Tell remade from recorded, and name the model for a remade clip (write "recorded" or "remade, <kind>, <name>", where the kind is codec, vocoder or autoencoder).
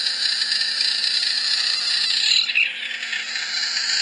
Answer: recorded